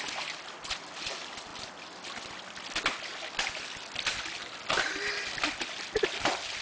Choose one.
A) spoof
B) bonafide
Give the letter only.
B